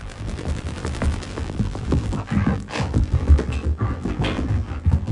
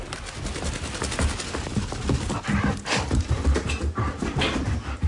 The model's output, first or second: first